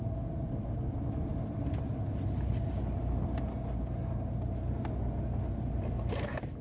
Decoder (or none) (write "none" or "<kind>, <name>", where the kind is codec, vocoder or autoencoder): none